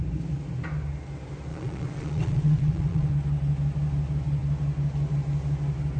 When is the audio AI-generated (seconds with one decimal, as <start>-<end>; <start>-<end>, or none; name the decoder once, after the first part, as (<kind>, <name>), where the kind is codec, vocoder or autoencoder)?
1.5-3.1 (vocoder, Vocos)